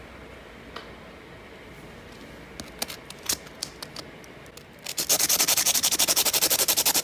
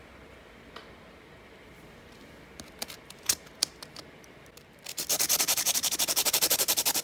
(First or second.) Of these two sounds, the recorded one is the first